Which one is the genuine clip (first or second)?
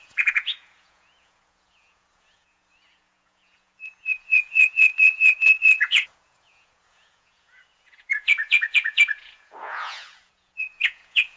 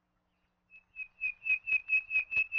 second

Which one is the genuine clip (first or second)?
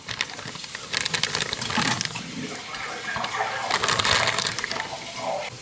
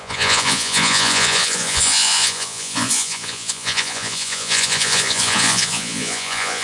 first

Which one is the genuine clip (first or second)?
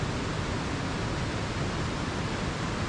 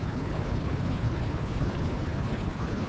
first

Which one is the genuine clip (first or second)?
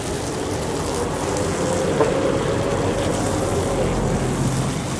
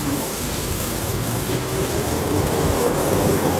first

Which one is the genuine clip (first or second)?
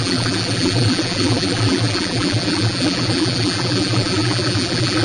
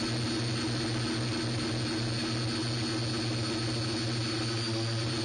second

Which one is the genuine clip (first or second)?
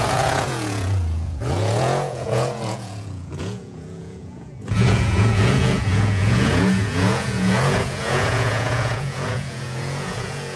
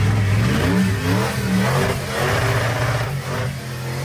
second